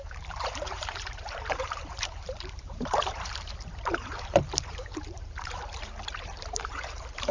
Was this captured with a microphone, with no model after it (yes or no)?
no